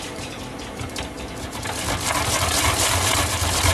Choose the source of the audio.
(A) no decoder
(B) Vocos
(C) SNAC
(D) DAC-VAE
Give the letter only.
A